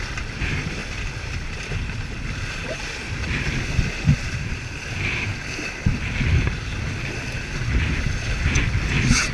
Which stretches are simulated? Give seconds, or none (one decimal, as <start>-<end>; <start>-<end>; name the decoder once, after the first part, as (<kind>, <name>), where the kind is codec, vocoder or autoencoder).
0.8-1.7 (vocoder, BigVGAN v2); 2.6-4.7; 5.3-6.9